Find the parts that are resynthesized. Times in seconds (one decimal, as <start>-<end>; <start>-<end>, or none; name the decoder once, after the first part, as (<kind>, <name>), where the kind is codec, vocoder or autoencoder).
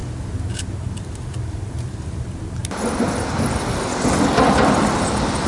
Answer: 0.5-2.6 (vocoder, BigVGAN v2); 4.3-5.5